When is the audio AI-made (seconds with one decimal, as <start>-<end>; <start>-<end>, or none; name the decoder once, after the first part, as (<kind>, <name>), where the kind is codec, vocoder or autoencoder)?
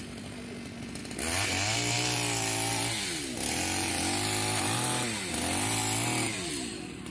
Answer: none